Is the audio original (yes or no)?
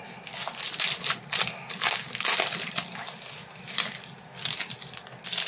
yes